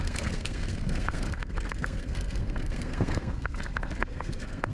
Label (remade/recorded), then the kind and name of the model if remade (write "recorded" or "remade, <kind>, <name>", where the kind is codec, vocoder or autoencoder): remade, codec, SNAC